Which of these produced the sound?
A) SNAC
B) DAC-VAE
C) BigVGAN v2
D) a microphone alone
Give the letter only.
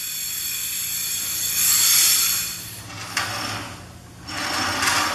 D